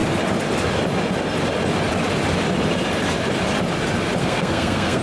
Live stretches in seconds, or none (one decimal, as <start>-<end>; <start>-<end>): 0.0-4.2